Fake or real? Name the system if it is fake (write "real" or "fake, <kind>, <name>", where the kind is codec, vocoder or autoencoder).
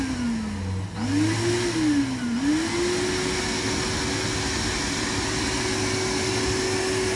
real